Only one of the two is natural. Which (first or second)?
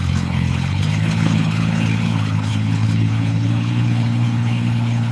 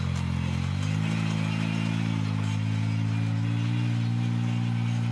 second